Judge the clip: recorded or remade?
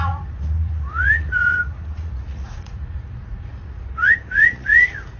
remade